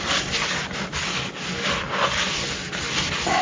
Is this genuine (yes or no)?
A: yes